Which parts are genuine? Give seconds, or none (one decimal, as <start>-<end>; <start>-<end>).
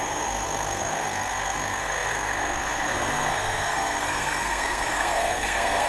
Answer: none